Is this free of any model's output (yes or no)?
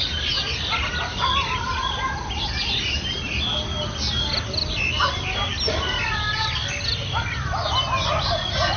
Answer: yes